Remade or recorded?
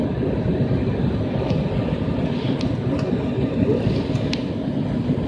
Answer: recorded